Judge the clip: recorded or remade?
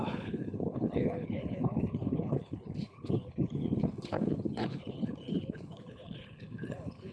remade